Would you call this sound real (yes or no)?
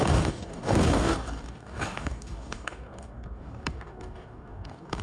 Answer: no